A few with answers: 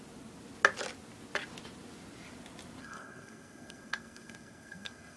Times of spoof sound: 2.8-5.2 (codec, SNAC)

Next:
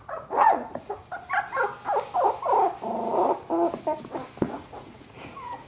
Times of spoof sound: 0.0-1.0 (vocoder, Vocos); 4.4-5.7

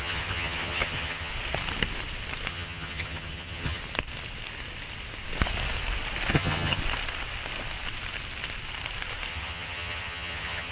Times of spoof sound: 0.0-1.3 (vocoder, HiFi-GAN); 2.5-3.8; 6.3-6.8; 9.3-10.7

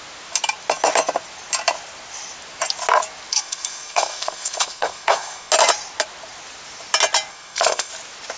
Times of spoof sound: 3.3-5.5 (codec, SNAC); 7.3-7.9